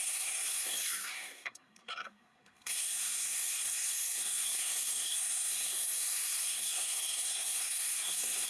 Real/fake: fake